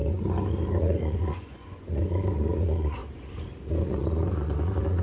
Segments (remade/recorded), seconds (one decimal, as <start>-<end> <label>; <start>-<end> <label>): 0.0-0.8 recorded; 0.8-3.0 remade; 3.0-3.7 recorded; 3.7-5.0 remade